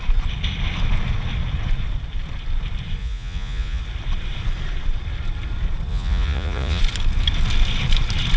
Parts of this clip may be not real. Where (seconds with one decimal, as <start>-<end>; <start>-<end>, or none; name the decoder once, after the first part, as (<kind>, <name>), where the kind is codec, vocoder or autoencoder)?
3.0-3.8 (vocoder, Vocos); 5.9-6.8